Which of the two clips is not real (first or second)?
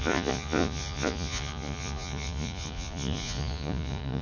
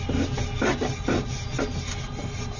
first